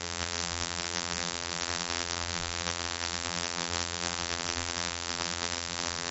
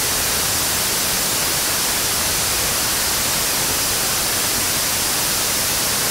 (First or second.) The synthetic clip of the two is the first